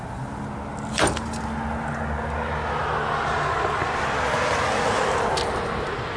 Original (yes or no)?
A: yes